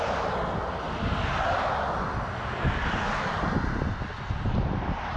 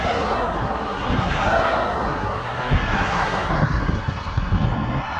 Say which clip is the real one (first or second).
first